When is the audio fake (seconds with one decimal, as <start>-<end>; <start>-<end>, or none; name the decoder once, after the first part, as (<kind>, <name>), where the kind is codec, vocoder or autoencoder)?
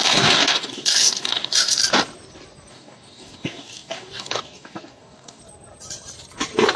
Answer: 0.0-1.8 (codec, DAC); 2.7-5.4